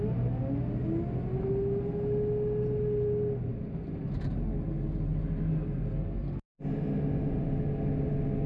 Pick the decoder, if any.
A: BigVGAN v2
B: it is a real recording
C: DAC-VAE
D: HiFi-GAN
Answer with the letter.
B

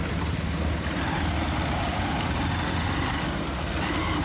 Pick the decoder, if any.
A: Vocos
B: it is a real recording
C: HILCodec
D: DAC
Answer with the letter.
B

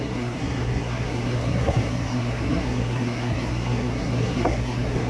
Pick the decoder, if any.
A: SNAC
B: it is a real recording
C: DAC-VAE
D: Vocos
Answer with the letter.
A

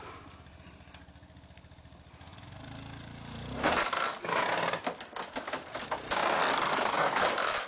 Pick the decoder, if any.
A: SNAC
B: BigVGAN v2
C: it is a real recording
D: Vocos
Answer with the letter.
C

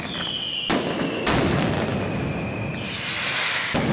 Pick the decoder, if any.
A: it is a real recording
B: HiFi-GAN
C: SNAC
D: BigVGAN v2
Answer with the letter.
A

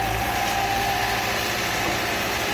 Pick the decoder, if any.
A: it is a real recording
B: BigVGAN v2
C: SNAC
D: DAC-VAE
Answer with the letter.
A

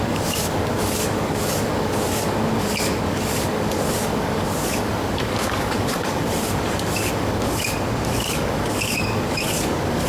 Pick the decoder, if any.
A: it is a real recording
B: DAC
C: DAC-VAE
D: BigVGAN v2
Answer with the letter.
B